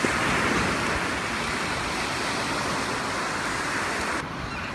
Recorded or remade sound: recorded